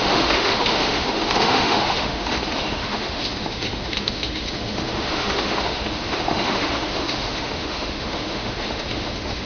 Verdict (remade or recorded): remade